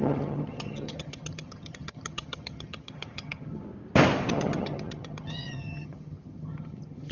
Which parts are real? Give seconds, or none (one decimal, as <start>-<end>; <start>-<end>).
3.6-4.3